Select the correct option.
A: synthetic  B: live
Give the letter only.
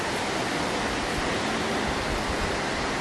B